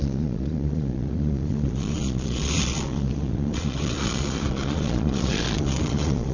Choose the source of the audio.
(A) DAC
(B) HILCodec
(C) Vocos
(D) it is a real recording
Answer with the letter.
C